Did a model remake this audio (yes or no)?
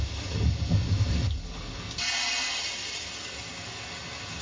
no